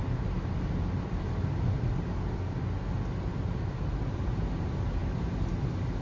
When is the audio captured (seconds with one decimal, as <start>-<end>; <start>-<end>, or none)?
1.7-3.3

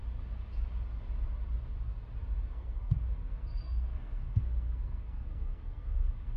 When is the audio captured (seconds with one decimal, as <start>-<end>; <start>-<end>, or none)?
0.0-2.5

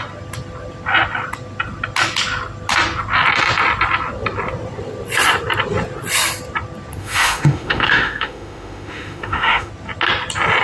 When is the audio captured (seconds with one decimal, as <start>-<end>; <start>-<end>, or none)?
0.0-7.0; 9.7-10.6

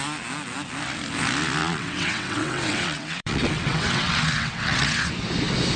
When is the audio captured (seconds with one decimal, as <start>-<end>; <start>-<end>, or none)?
0.0-1.6; 5.1-5.8

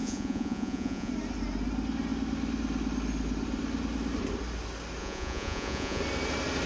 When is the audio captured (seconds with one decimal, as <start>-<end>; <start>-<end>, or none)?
1.1-5.0; 6.0-6.7

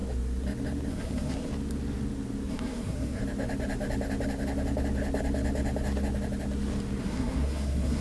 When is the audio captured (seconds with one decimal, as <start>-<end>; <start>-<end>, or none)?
0.0-0.9; 1.5-2.5; 3.2-7.0

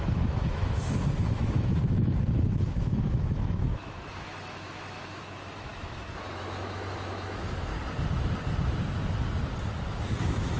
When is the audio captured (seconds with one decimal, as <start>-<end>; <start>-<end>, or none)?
7.7-10.0

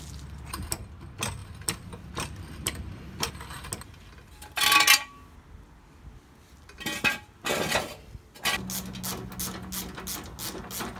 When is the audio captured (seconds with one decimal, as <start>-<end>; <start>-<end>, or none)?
0.0-1.4; 3.3-11.0